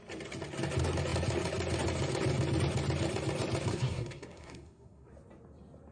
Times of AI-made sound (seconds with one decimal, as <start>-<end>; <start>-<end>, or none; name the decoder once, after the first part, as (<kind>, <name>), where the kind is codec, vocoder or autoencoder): 3.7-5.1 (codec, SNAC)